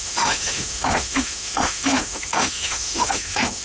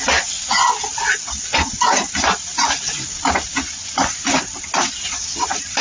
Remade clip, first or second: first